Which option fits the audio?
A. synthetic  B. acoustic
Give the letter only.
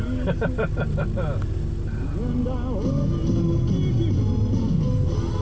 B